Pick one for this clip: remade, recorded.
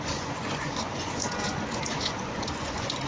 remade